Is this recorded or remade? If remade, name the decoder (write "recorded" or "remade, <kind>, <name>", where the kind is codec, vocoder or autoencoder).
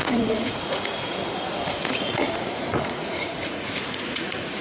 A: remade, vocoder, Vocos